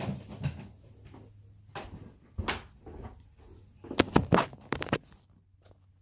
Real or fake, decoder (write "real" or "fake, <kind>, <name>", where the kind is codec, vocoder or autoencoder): real